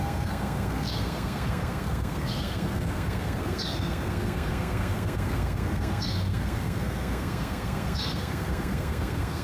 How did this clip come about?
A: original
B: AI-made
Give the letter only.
B